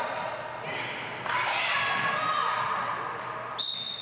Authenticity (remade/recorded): recorded